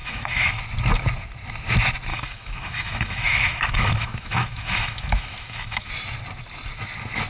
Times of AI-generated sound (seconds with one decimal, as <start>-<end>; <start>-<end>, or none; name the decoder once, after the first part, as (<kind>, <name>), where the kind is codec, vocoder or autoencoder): 0.0-0.6 (autoencoder, DAC-VAE); 2.1-5.9